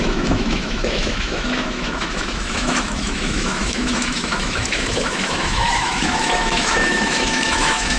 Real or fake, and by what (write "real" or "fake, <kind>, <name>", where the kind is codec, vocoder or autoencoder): fake, autoencoder, DAC-VAE